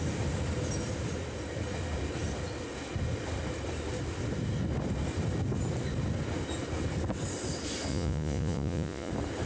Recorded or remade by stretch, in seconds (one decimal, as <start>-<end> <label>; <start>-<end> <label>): 0.0-7.9 recorded; 7.9-9.1 remade; 9.1-9.5 recorded